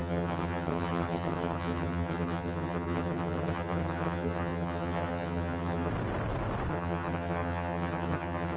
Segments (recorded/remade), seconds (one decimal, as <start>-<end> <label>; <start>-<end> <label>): 0.0-5.9 remade; 5.9-6.7 recorded; 6.7-8.6 remade

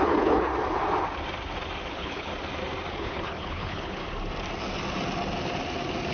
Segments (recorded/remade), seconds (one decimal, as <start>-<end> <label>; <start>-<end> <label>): 0.0-0.5 remade; 0.5-1.9 recorded; 1.9-2.3 remade; 2.3-2.9 recorded; 2.9-4.0 remade; 4.0-6.1 recorded

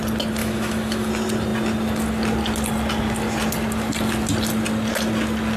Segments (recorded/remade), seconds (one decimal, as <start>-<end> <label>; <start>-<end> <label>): 0.0-0.4 recorded; 0.4-1.1 remade; 1.1-5.6 recorded